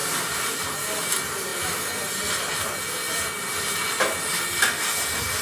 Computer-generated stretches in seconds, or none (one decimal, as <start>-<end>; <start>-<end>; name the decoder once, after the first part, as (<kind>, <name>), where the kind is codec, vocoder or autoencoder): 0.0-0.6 (vocoder, BigVGAN v2)